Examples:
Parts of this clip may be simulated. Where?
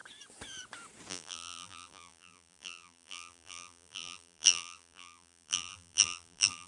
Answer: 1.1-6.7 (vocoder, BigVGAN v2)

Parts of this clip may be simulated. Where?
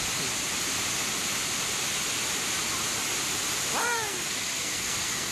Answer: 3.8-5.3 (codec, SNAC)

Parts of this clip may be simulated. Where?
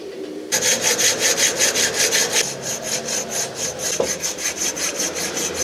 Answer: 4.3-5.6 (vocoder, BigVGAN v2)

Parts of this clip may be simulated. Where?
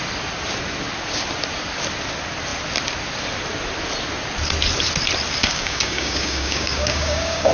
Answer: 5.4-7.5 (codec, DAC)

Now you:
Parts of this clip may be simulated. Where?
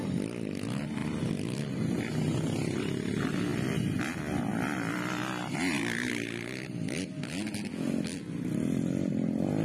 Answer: 4.5-7.1 (vocoder, BigVGAN v2)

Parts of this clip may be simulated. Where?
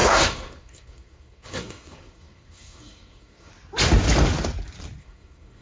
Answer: 0.0-3.5 (codec, SNAC); 5.0-5.6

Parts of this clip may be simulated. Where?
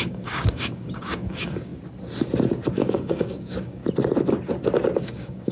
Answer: 0.0-1.7 (codec, DAC); 2.7-3.8; 5.0-5.5